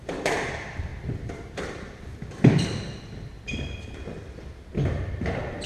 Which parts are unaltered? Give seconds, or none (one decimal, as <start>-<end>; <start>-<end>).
0.0-0.9; 3.0-5.7